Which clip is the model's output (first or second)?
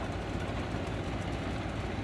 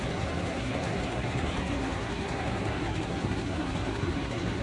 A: second